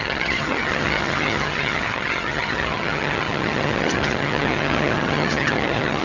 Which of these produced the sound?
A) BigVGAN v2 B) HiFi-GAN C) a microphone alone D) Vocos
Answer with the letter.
B